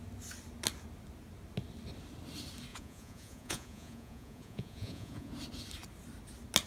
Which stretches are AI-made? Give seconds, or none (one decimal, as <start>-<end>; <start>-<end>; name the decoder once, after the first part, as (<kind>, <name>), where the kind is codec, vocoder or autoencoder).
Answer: 2.7-5.3 (vocoder, Vocos)